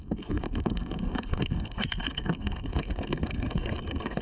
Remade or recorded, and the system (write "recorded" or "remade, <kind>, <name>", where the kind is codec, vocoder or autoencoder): remade, codec, SNAC